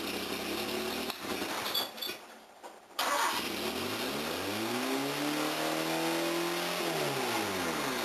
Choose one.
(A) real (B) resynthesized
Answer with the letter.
A